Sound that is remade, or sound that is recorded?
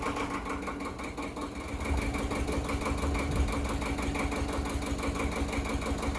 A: recorded